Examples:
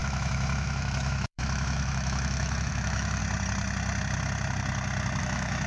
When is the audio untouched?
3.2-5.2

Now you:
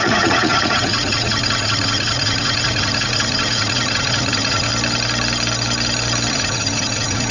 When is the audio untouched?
4.7-6.3

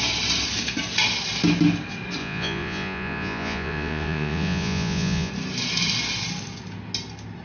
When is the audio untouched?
0.0-2.2; 5.3-7.4

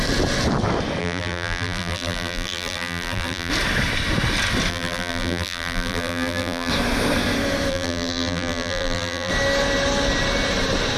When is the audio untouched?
0.0-1.0; 3.5-4.7; 6.7-7.7; 9.3-11.0

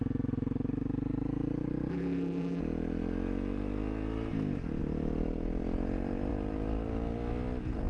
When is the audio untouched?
0.0-1.9; 2.6-7.9